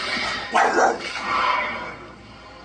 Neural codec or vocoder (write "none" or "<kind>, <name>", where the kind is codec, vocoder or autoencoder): none